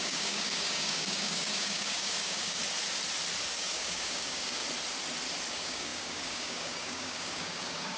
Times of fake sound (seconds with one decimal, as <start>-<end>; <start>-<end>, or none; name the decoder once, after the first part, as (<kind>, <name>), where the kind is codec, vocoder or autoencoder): 0.0-2.6 (codec, DAC); 3.5-4.6; 5.5-8.0